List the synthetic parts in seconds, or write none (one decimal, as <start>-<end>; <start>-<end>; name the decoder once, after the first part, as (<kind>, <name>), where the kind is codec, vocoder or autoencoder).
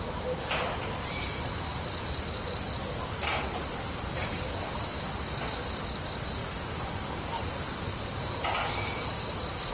none